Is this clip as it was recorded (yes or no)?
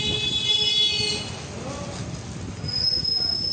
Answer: yes